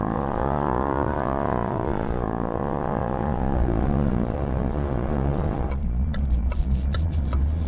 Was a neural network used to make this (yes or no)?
yes